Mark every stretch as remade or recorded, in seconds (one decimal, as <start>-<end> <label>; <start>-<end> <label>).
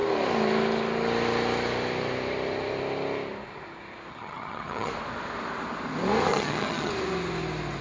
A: 0.0-4.1 recorded; 4.1-4.9 remade; 4.9-6.3 recorded; 6.3-6.9 remade; 6.9-7.8 recorded